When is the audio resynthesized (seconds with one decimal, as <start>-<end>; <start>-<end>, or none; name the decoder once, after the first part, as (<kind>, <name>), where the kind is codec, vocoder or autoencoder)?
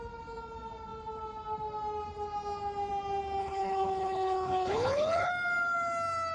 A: 3.4-5.3 (codec, HILCodec)